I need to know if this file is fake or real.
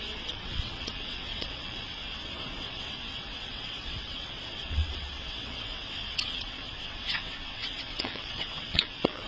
fake